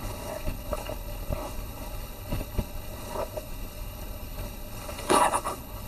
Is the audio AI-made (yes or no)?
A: yes